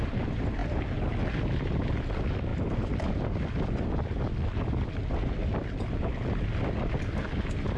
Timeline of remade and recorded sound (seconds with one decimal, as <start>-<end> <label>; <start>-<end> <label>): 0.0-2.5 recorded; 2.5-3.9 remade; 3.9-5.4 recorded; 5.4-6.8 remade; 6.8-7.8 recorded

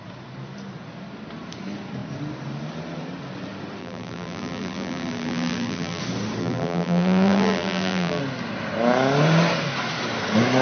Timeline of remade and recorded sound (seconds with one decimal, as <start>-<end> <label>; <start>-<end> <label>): 0.0-3.8 recorded; 3.8-6.0 remade; 6.0-6.4 recorded; 6.4-8.2 remade; 8.2-10.6 recorded

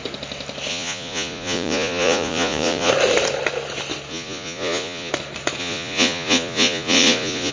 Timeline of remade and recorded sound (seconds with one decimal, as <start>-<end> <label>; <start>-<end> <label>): 0.0-0.7 recorded; 0.7-2.9 remade; 2.9-4.1 recorded; 4.1-5.1 remade; 5.1-5.6 recorded; 5.6-7.5 remade

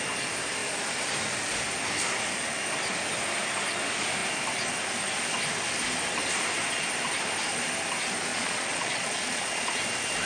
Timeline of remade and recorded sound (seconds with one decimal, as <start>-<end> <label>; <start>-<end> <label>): 0.0-8.3 recorded; 8.3-9.8 remade; 9.8-10.3 recorded

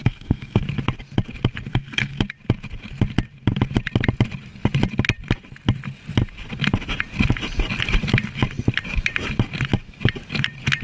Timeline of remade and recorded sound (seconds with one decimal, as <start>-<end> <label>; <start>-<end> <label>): 0.0-0.6 remade; 0.6-1.7 recorded; 1.7-2.2 remade; 2.2-10.8 recorded